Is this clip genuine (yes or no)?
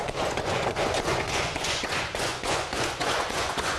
no